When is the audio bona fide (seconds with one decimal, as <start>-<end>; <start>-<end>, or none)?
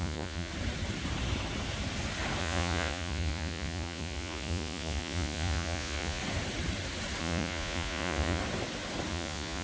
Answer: 0.5-2.4; 6.2-7.2; 8.4-9.1